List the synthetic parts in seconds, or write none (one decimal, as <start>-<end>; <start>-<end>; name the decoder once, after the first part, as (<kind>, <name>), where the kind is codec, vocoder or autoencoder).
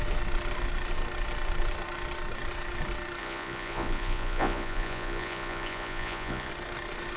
3.2-6.5 (vocoder, Vocos)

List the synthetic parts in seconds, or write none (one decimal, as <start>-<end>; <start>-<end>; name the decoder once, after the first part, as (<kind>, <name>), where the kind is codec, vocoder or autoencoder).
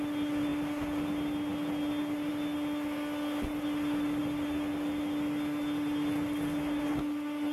none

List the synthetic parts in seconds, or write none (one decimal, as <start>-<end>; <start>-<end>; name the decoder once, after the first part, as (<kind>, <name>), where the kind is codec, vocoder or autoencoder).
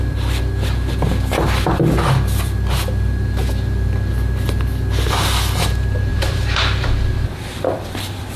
6.1-8.4 (vocoder, BigVGAN v2)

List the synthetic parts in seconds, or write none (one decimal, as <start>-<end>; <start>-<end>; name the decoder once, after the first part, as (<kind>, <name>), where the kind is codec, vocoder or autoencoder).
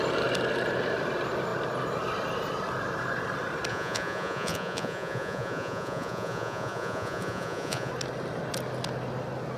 3.7-7.9 (vocoder, Vocos)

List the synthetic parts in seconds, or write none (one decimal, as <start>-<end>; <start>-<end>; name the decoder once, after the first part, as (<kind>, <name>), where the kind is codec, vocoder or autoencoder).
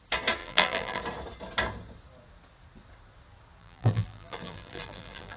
0.4-1.0 (vocoder, BigVGAN v2); 3.6-5.4